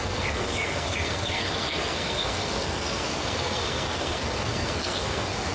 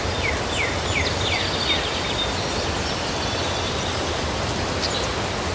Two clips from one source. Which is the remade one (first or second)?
first